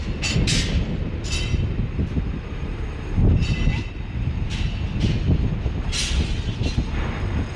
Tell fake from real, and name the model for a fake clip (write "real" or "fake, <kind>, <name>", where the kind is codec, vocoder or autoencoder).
real